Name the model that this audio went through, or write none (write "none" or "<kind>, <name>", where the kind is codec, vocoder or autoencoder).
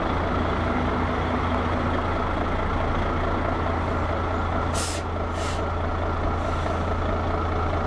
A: none